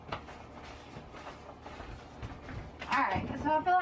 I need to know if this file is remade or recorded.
recorded